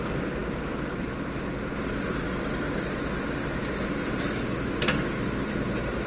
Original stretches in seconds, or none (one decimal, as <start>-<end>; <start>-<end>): 0.0-6.1